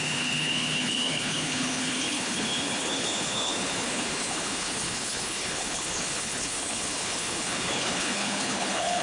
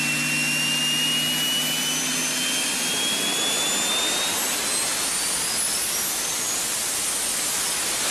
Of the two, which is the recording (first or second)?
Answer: second